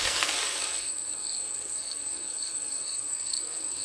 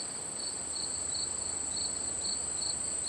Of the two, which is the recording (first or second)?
second